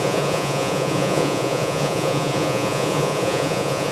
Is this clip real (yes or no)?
no